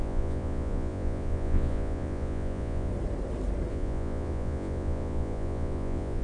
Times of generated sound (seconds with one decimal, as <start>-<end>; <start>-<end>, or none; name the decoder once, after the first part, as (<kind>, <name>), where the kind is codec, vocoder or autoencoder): 0.0-2.9 (vocoder, Vocos); 3.7-6.2